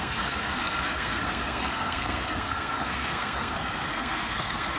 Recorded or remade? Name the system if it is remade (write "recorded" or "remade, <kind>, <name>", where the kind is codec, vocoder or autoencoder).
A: remade, codec, SNAC